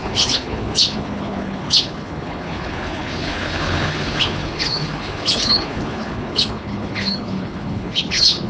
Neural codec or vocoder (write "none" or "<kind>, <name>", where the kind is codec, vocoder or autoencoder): codec, HILCodec